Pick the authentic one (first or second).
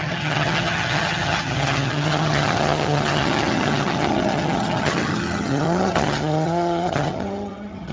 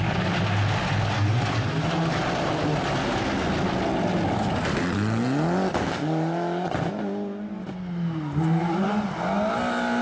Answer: second